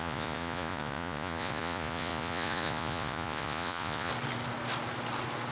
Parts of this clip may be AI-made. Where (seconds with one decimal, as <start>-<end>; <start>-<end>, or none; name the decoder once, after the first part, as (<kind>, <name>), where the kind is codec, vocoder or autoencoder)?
0.0-4.1 (vocoder, Vocos)